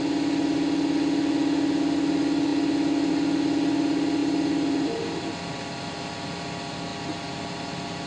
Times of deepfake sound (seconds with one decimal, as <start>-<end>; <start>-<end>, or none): none